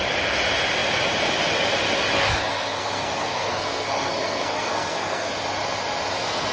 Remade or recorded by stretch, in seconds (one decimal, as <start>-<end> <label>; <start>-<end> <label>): 0.0-2.5 recorded; 2.5-5.3 remade; 5.3-6.5 recorded